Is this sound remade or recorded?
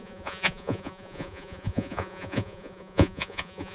remade